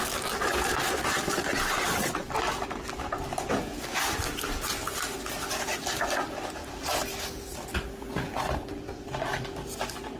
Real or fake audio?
real